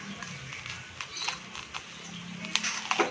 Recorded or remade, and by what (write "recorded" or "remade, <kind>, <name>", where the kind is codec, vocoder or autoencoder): recorded